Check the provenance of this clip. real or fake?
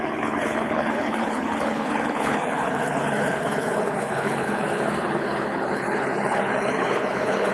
fake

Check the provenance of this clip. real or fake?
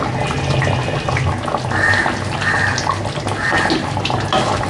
fake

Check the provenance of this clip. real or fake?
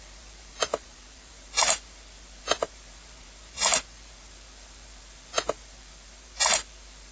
fake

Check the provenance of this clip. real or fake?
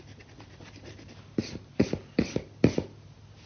real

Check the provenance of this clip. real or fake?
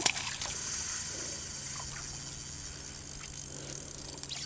real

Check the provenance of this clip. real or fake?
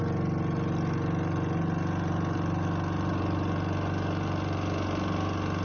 real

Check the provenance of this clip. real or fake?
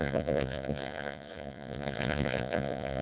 fake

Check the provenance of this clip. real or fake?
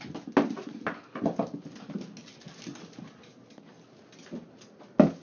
real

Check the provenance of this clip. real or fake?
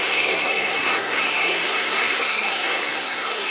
fake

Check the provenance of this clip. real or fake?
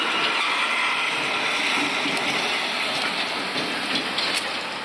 real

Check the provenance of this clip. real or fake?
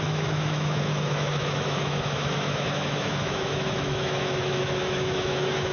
fake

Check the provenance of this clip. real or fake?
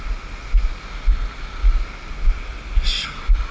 real